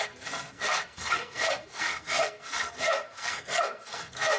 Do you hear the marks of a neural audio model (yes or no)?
yes